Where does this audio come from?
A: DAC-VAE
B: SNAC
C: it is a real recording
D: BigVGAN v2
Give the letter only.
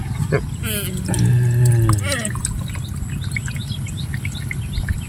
C